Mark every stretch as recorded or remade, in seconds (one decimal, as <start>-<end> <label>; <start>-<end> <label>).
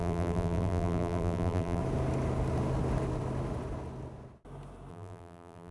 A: 0.0-1.8 remade; 1.8-4.9 recorded; 4.9-5.7 remade